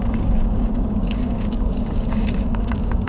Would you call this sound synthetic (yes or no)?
yes